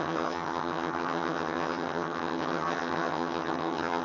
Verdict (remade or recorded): remade